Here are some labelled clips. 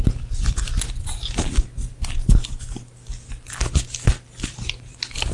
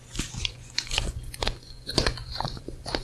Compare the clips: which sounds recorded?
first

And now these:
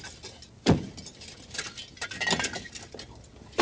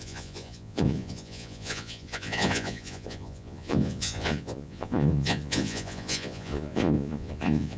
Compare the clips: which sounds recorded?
first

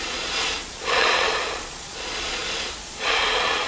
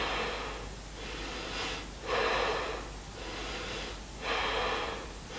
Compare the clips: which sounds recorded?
second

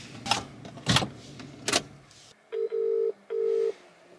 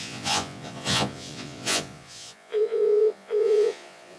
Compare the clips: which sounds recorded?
first